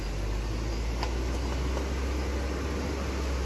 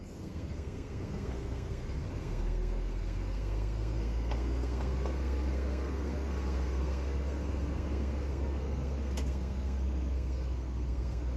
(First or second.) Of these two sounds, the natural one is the first